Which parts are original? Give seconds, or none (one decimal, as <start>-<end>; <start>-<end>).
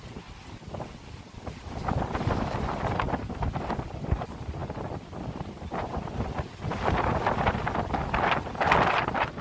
0.0-9.4